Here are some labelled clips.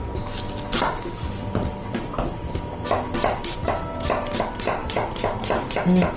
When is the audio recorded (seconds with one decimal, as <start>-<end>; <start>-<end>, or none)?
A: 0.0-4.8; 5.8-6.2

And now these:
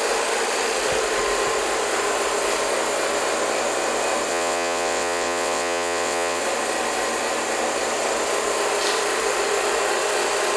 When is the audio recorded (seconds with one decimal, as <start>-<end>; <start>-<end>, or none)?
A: 0.0-4.3; 6.4-10.6

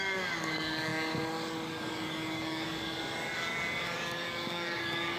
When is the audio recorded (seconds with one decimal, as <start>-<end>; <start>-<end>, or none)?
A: none

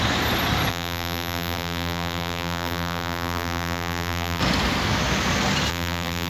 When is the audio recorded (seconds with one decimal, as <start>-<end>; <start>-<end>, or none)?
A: 0.0-0.7; 4.4-5.7

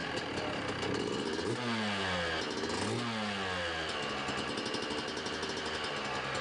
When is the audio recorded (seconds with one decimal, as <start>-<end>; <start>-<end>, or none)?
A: 0.7-6.4

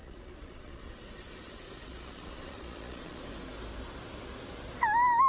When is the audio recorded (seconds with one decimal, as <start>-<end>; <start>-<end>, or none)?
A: 3.2-5.3